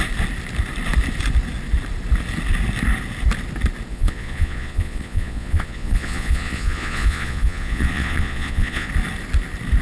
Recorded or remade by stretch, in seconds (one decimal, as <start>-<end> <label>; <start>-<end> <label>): 0.0-3.9 recorded; 3.9-8.9 remade; 8.9-9.8 recorded